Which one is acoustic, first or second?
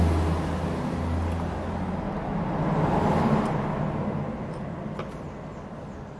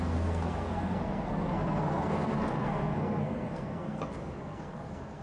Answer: first